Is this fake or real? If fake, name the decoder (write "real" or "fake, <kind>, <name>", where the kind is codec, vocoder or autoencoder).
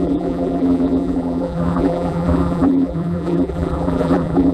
fake, vocoder, BigVGAN v2